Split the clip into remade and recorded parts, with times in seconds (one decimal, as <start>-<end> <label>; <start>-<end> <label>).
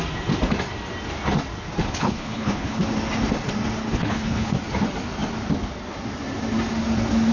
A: 0.0-1.8 recorded; 1.8-2.8 remade; 2.8-3.8 recorded; 3.8-4.5 remade; 4.5-7.3 recorded